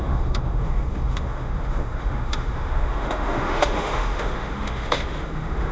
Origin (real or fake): fake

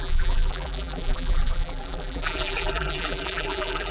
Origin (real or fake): fake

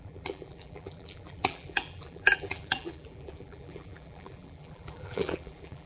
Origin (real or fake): fake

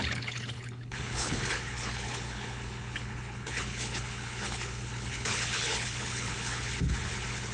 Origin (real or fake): fake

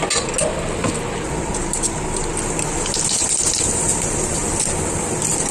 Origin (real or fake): real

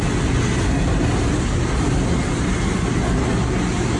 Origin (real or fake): real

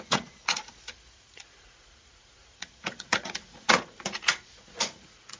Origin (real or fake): fake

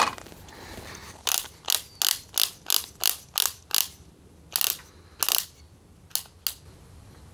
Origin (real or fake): real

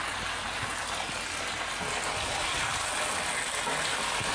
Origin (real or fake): real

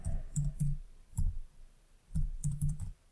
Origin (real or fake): fake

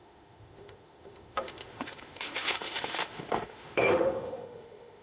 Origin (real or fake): fake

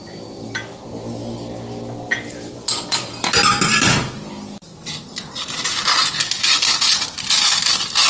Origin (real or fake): real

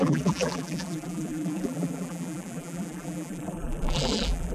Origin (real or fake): fake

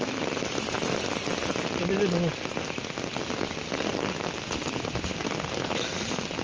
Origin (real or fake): real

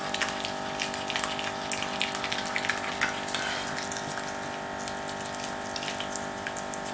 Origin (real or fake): real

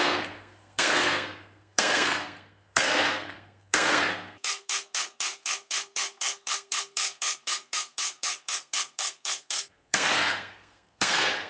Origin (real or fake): fake